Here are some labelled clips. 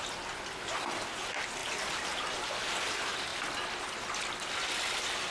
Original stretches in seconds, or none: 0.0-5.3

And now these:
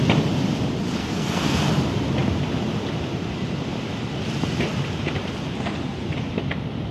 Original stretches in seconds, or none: 0.0-1.0; 1.7-6.9

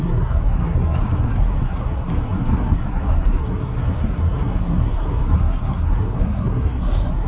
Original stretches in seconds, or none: none

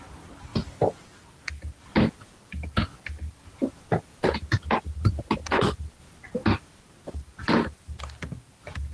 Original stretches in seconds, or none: 0.0-8.9

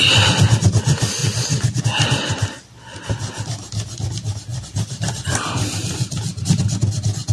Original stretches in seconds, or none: 0.0-7.3

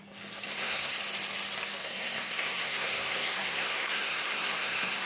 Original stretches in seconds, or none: 0.0-0.5; 1.0-1.8